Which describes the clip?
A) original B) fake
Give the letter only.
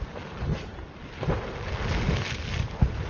A